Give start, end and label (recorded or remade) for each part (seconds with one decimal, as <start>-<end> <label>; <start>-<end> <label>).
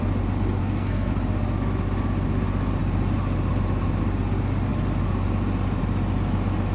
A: 0.0-0.6 recorded; 0.6-1.1 remade; 1.1-6.7 recorded